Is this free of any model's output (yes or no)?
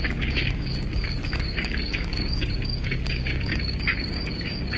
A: no